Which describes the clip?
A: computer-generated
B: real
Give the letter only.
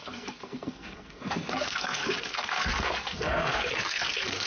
A